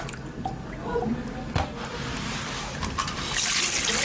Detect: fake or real real